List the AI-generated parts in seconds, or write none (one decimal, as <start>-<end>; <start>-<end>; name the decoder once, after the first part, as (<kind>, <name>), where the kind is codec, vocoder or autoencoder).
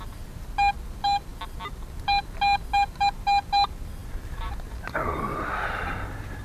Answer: 4.0-4.5 (vocoder, BigVGAN v2)